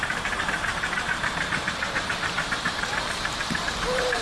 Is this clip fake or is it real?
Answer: fake